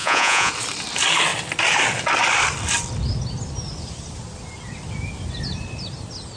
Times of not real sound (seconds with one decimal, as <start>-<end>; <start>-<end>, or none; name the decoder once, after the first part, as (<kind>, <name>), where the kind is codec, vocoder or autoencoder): 0.0-0.5 (vocoder, Vocos)